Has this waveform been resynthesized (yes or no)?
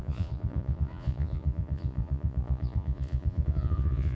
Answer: yes